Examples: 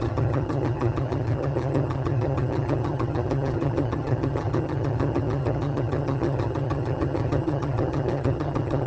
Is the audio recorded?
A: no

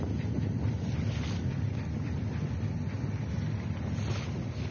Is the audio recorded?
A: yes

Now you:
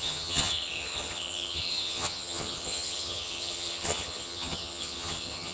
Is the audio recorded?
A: no